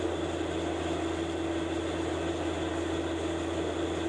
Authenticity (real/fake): real